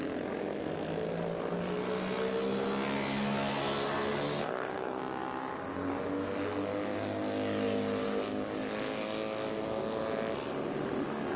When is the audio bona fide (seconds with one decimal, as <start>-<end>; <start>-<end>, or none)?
0.0-4.4; 5.0-11.4